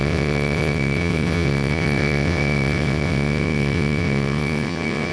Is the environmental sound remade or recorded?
remade